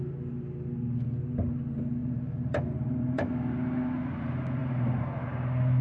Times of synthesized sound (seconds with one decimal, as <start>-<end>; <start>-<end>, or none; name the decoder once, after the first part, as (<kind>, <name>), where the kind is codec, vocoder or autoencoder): 2.0-3.3 (vocoder, BigVGAN v2); 4.6-5.1